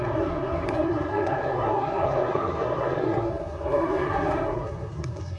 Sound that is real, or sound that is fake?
fake